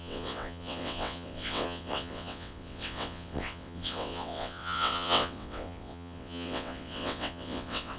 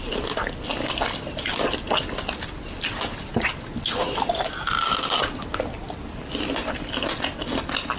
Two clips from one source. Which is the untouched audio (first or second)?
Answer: second